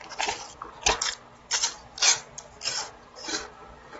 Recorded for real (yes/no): yes